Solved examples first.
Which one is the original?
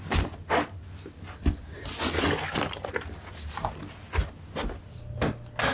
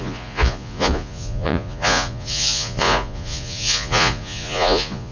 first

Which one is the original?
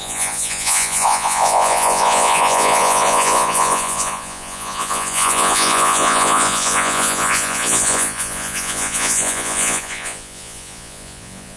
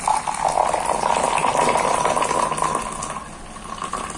second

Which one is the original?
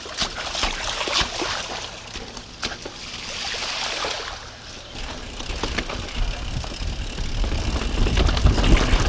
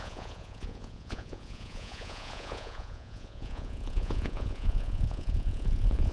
first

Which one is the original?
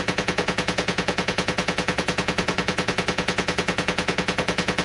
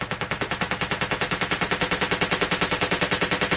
second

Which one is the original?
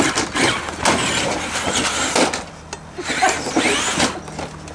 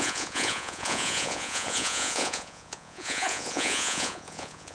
first